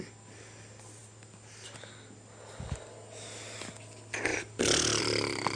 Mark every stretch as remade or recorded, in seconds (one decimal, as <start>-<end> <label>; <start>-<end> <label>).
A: 0.0-5.6 recorded